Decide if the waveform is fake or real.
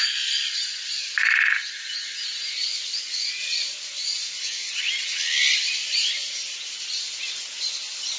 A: real